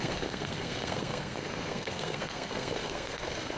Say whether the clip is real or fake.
fake